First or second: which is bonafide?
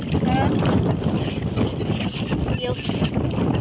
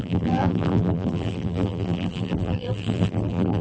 first